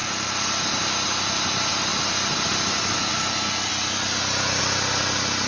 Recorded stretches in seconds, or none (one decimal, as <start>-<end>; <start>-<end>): 0.0-5.5